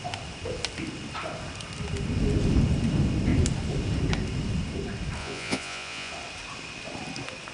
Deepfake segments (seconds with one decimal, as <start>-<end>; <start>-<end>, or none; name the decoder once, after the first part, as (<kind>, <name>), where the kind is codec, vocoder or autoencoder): 5.2-6.1 (vocoder, Vocos)